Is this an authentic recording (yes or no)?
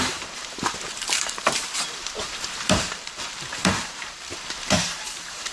no